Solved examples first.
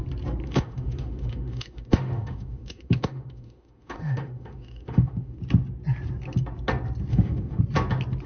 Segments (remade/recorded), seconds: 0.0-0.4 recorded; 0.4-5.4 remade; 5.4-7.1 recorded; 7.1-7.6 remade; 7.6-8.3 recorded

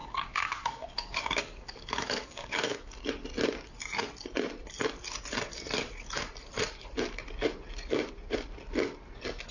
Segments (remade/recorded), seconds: 0.0-2.9 remade; 2.9-9.5 recorded

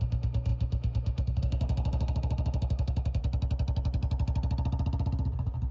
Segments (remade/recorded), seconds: 0.0-3.2 remade; 3.2-5.7 recorded

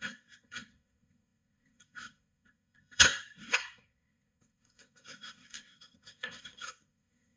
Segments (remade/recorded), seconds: 0.0-7.4 remade